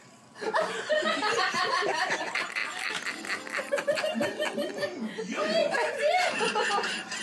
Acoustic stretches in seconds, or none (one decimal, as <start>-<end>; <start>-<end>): 2.6-3.7